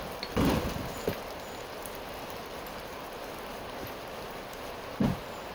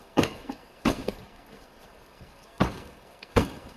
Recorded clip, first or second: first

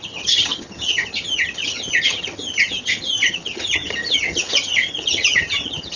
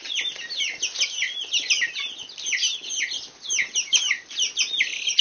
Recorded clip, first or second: second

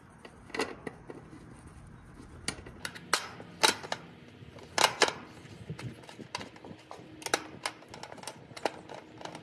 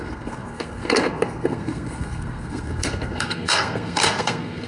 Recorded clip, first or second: first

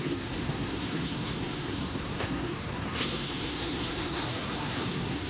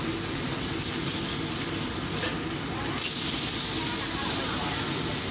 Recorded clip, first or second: second